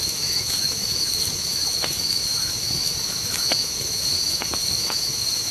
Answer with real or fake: fake